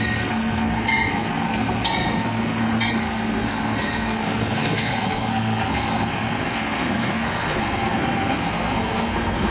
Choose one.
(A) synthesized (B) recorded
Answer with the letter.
A